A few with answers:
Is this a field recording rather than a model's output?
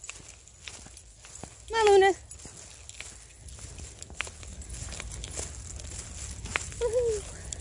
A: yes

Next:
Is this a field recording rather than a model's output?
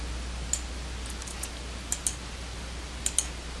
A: yes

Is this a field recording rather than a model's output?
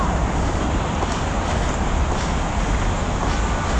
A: yes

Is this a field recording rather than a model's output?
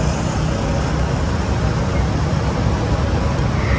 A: yes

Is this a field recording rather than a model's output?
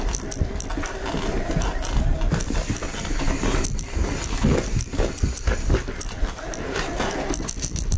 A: yes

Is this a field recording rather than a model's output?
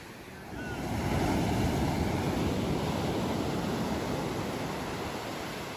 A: yes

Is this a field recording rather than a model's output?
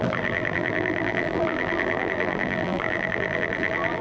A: no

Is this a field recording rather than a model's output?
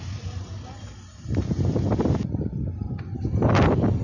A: yes